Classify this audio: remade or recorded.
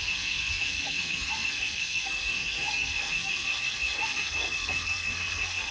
remade